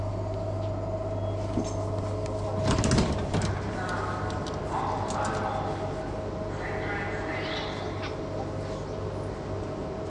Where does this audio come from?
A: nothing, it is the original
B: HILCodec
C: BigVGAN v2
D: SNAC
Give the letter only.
A